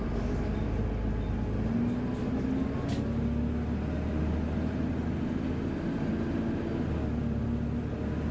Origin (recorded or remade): recorded